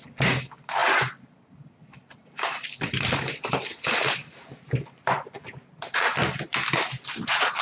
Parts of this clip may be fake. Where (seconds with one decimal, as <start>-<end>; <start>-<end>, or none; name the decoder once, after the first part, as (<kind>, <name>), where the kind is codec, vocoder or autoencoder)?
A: 0.8-1.4 (vocoder, BigVGAN v2); 1.8-4.7; 6.5-7.6